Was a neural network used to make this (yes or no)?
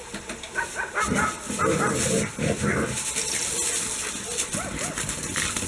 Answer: no